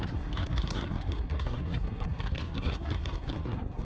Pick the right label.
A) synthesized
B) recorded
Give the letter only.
A